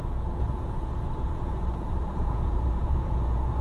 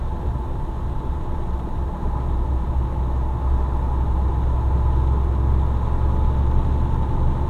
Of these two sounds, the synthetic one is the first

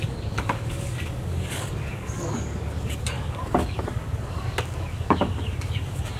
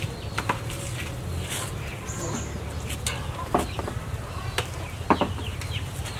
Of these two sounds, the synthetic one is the first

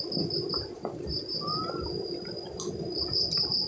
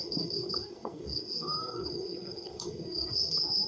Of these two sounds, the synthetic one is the second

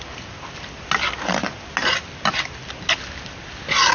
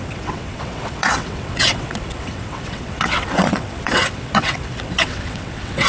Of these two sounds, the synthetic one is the second